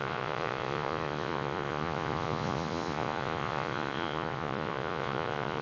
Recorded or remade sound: remade